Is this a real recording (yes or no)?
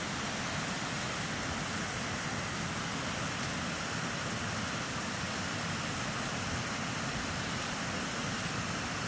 yes